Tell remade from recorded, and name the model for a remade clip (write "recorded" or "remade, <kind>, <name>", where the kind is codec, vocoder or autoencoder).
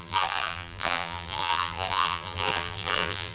remade, vocoder, BigVGAN v2